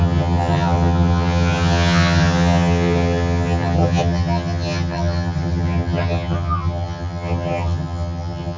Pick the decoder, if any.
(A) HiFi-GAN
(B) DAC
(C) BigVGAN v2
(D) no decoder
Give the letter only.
A